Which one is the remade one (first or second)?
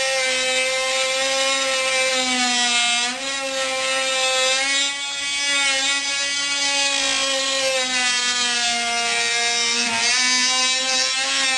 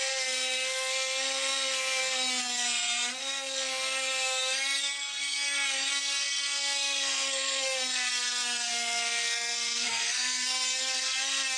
second